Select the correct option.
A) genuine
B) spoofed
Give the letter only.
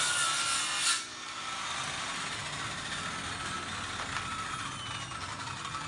A